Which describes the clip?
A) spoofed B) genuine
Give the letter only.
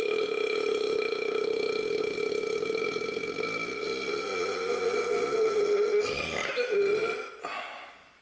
B